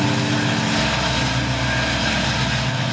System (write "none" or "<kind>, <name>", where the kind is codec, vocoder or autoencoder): none